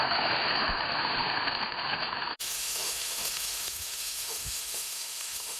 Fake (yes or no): yes